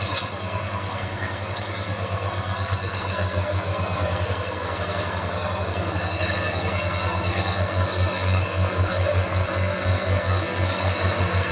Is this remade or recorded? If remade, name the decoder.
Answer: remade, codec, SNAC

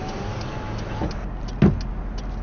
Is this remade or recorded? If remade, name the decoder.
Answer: recorded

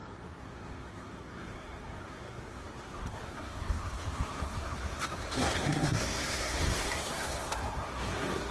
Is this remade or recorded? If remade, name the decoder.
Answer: remade, codec, SNAC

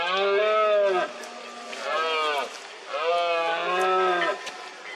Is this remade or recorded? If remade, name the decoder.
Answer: recorded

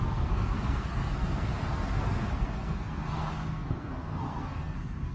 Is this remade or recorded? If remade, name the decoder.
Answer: remade, codec, SNAC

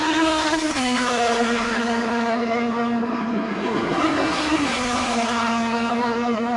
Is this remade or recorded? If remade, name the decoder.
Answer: remade, codec, SNAC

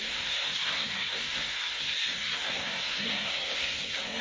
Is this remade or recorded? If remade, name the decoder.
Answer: remade, codec, SNAC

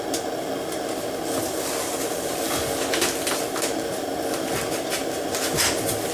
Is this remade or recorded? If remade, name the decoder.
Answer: recorded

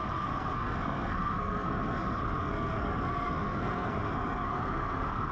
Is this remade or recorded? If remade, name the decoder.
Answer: remade, codec, SNAC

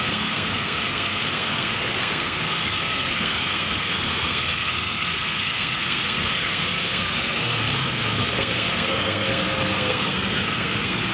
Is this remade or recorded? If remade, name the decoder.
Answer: remade, codec, SNAC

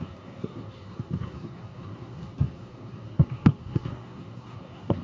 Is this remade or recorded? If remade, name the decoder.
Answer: remade, codec, SNAC